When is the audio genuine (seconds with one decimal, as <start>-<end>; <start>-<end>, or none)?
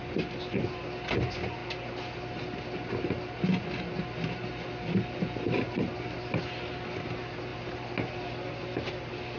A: 0.0-9.4